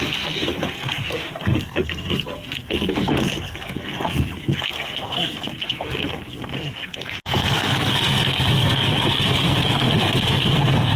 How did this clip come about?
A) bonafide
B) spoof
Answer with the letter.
B